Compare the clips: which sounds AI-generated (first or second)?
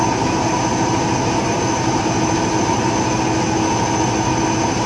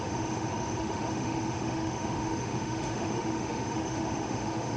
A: second